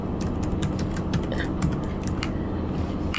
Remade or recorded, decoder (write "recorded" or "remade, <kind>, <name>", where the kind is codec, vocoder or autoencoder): recorded